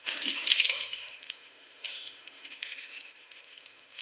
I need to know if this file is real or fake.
fake